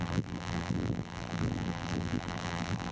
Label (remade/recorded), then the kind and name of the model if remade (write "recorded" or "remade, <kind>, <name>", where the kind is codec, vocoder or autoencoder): remade, vocoder, BigVGAN v2